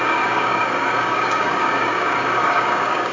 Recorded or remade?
remade